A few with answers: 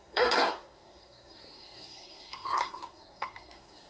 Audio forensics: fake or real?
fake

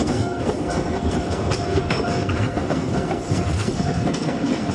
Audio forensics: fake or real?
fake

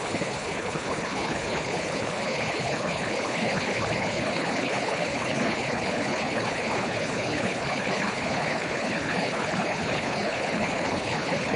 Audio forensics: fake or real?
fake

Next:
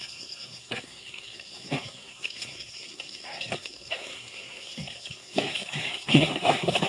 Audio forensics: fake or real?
fake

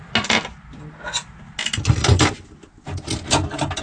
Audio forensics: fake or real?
real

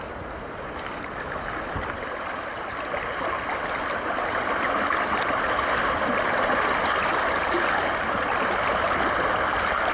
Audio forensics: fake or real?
real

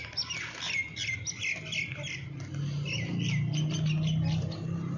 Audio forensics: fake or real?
real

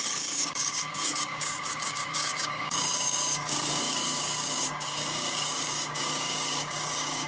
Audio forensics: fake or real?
fake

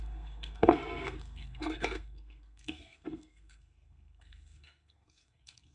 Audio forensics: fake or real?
fake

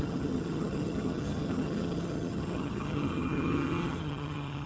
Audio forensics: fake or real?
fake